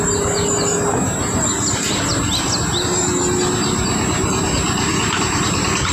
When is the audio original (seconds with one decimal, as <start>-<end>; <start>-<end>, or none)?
0.0-5.9